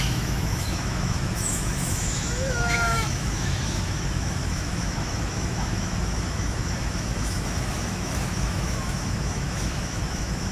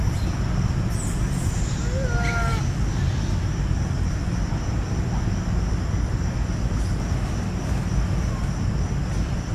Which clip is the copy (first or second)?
first